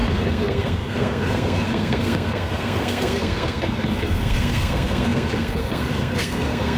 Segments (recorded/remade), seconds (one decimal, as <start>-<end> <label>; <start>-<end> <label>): 0.0-6.8 remade